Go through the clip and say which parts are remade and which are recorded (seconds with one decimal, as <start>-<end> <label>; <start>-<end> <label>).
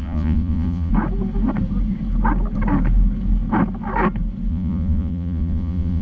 0.0-0.9 remade; 0.9-4.5 recorded; 4.5-6.0 remade